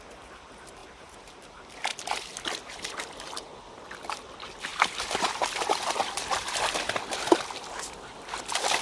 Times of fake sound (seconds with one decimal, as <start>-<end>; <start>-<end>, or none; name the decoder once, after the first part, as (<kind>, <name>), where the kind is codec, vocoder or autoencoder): 0.0-0.8 (vocoder, BigVGAN v2); 1.4-1.9; 3.1-4.7; 7.4-8.8